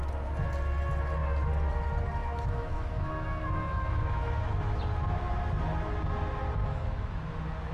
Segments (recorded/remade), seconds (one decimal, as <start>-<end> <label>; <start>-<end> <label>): 0.0-2.2 recorded; 2.2-4.8 remade; 4.8-6.6 recorded; 6.6-7.3 remade; 7.3-7.7 recorded

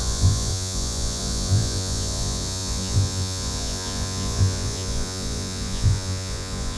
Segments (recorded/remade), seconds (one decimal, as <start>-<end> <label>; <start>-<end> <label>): 0.0-6.8 remade

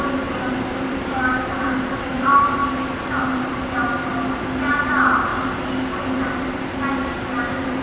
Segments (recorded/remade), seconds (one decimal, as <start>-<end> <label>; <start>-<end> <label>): 0.0-2.6 remade; 2.6-3.2 recorded; 3.2-4.1 remade; 4.1-4.7 recorded; 4.7-5.3 remade; 5.3-6.1 recorded; 6.1-7.8 remade

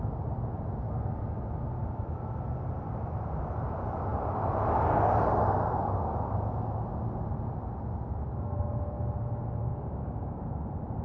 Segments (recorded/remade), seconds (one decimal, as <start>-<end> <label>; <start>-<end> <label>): 0.0-9.6 recorded; 9.6-10.4 remade; 10.4-11.0 recorded

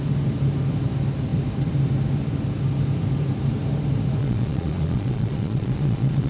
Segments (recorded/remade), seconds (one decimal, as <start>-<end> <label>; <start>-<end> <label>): 0.0-4.2 recorded; 4.2-6.3 remade

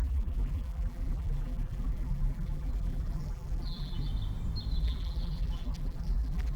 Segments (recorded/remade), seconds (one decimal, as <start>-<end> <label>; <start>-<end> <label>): 0.0-4.1 remade; 4.1-4.8 recorded; 4.8-6.6 remade